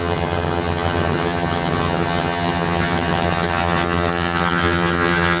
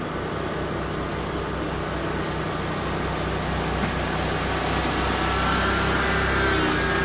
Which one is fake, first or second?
first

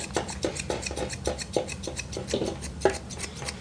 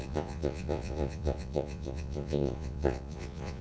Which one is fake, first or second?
second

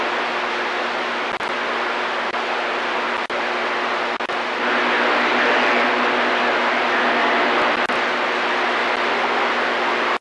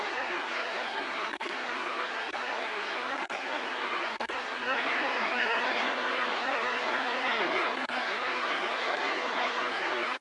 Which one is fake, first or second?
second